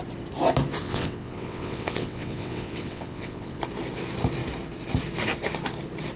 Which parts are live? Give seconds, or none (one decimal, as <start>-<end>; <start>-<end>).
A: 0.0-0.8; 3.6-6.2